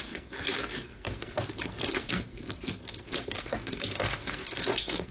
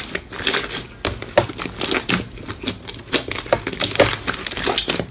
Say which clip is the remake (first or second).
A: first